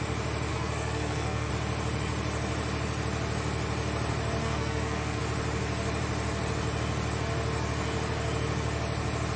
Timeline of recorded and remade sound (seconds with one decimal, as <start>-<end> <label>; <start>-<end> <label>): 0.0-0.5 recorded; 0.5-1.5 remade; 1.5-4.4 recorded; 4.4-5.2 remade; 5.2-9.4 recorded